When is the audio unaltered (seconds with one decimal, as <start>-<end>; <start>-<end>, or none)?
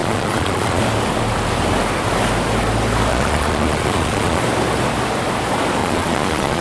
0.8-3.1; 4.4-5.8